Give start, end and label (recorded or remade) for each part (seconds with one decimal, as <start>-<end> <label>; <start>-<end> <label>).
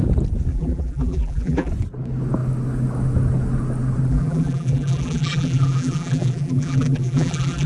0.0-0.5 recorded; 0.5-1.7 remade; 1.7-4.1 recorded; 4.1-7.7 remade